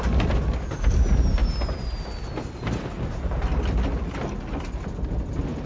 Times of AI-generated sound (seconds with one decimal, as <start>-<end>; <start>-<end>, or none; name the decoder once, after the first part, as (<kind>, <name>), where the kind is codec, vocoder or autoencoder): none